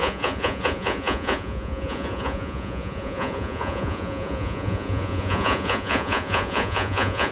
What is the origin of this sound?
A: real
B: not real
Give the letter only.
B